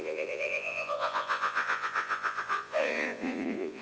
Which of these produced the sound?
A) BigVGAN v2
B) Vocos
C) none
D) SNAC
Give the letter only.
B